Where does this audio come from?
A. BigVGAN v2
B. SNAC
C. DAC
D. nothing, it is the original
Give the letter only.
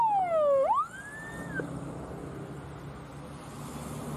D